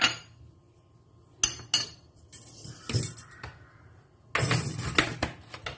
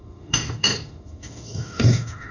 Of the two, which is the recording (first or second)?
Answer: first